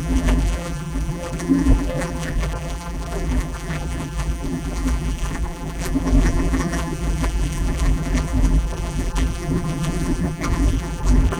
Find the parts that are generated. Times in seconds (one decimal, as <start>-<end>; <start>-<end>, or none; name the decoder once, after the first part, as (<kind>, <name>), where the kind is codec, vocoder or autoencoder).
0.0-11.4 (vocoder, BigVGAN v2)